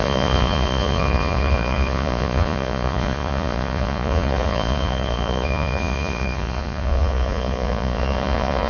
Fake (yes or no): yes